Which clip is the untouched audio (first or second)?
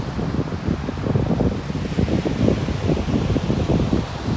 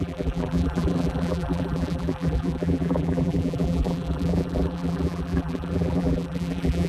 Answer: first